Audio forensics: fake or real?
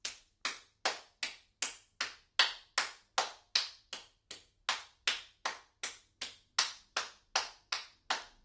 real